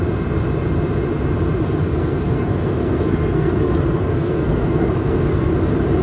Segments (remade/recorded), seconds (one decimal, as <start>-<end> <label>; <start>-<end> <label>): 0.0-1.9 recorded; 1.9-5.5 remade; 5.5-6.0 recorded